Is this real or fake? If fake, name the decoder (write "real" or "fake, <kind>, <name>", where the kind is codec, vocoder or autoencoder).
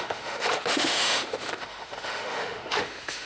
fake, autoencoder, DAC-VAE